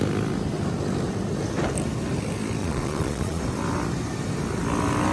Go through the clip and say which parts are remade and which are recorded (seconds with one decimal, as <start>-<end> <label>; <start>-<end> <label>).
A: 0.0-2.6 recorded; 2.6-3.4 remade; 3.4-5.1 recorded